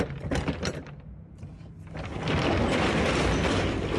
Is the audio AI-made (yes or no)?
no